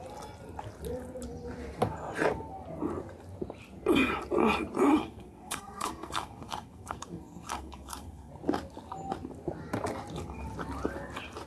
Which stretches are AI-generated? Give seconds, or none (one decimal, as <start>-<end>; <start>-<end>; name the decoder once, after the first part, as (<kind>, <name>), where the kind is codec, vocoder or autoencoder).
5.0-8.3 (codec, SNAC)